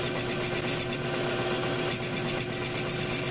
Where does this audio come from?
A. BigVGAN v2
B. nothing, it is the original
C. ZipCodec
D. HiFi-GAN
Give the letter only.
B